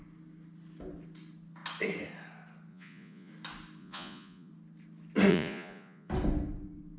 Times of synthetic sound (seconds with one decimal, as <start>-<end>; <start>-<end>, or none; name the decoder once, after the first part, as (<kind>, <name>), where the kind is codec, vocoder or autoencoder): 2.7-3.3 (vocoder, Vocos); 3.8-4.5; 5.3-6.1